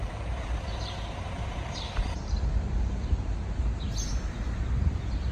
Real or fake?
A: fake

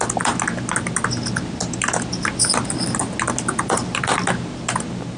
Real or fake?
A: real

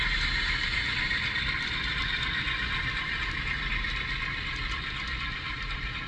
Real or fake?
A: fake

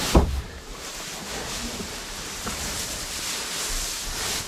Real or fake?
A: fake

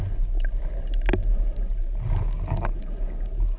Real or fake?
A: real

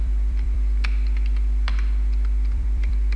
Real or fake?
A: fake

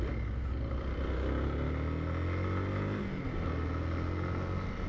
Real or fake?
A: real